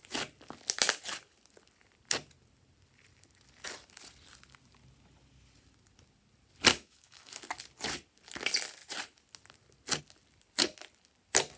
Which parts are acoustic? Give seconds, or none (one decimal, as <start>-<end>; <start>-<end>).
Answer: 0.0-6.7; 7.3-11.6